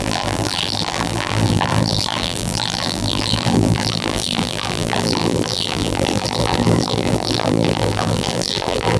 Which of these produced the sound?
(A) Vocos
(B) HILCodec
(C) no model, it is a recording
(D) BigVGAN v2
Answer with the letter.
D